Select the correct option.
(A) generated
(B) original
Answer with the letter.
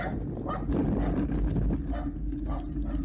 B